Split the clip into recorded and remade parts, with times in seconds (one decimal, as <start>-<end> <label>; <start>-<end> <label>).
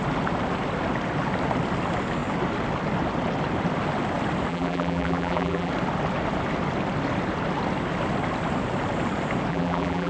0.0-4.5 recorded; 4.5-5.7 remade; 5.7-9.5 recorded; 9.5-10.1 remade